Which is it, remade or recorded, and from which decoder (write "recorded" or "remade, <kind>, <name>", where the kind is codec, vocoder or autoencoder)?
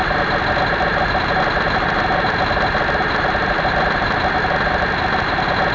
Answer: recorded